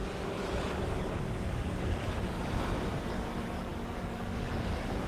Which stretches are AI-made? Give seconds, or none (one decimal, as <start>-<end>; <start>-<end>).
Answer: 0.0-2.0; 2.9-5.1